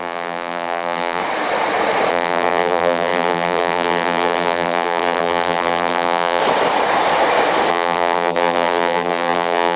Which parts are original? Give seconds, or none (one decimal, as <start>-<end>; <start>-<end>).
1.2-2.1; 6.4-7.7